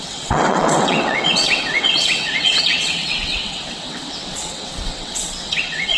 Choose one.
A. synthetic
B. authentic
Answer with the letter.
A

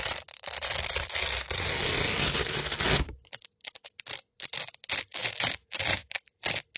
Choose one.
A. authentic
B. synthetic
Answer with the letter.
A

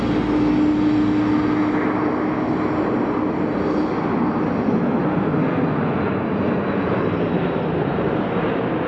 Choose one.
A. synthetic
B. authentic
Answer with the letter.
B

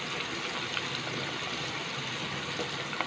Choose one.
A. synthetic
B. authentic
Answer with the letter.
B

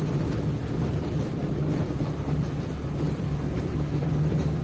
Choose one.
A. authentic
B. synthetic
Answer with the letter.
A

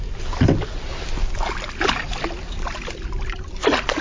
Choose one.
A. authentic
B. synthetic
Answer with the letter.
A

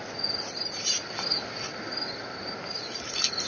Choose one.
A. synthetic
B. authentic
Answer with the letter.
B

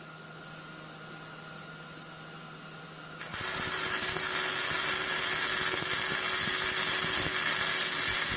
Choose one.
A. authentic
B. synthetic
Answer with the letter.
A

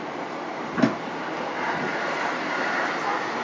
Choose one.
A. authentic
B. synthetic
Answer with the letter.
A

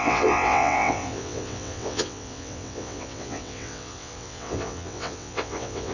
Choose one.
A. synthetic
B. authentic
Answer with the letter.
A